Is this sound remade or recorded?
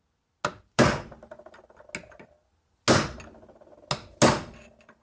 recorded